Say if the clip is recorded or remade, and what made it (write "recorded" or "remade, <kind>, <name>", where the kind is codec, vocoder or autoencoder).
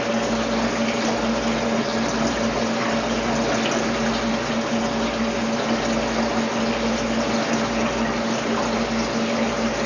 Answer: recorded